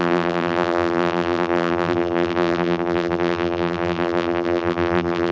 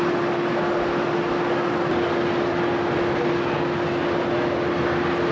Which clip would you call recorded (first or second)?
second